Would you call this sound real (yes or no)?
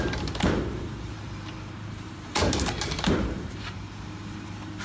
no